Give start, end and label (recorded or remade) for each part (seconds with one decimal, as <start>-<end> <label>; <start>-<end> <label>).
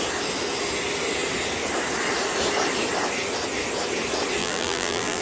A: 0.0-4.4 recorded; 4.4-5.2 remade